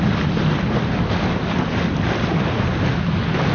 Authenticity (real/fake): real